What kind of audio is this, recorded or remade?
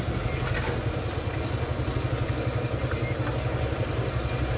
recorded